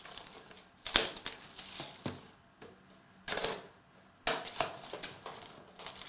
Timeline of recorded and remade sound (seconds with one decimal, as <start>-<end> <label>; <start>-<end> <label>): 0.0-3.4 remade; 3.4-5.0 recorded; 5.0-6.1 remade